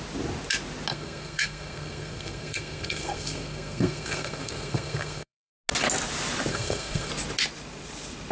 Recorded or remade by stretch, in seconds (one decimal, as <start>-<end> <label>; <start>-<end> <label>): 0.0-0.9 recorded; 0.9-5.5 remade; 5.5-6.5 recorded; 6.5-7.1 remade; 7.1-8.3 recorded